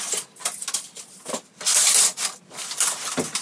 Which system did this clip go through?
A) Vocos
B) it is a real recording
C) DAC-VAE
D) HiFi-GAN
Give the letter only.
B